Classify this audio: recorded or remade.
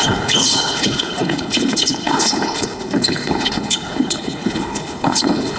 remade